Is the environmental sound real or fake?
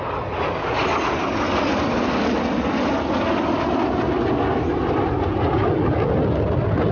real